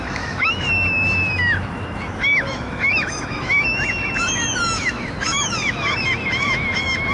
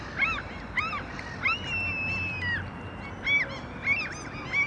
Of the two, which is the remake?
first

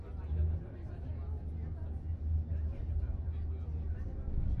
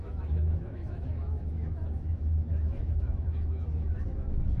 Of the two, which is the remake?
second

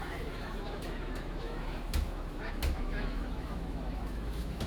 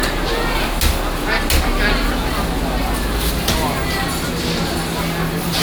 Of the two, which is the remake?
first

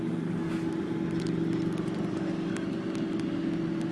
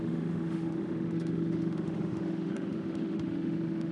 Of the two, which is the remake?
second